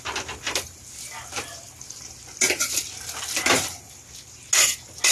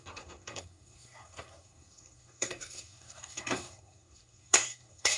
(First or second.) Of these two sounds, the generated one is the second